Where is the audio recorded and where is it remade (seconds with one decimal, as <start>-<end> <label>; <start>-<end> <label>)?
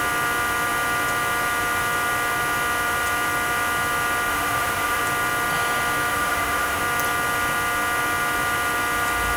0.0-4.3 recorded; 4.3-5.0 remade; 5.0-6.1 recorded; 6.1-6.8 remade; 6.8-9.4 recorded